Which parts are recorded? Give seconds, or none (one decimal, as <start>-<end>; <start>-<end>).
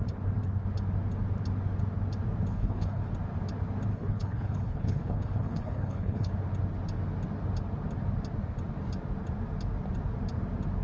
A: 0.0-2.5; 3.1-3.9; 6.3-10.8